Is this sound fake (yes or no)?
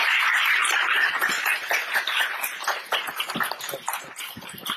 no